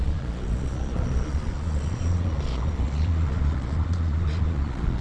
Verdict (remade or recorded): remade